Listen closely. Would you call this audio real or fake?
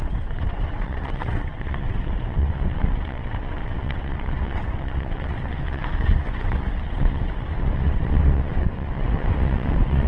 fake